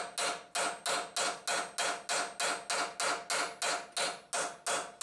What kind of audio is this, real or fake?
real